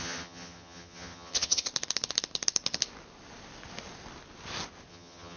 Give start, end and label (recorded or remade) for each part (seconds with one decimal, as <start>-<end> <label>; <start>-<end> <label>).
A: 0.0-1.7 remade; 1.7-4.9 recorded; 4.9-5.4 remade